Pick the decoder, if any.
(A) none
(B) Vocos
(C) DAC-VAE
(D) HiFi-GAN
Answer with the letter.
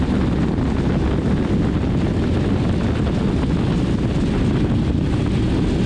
A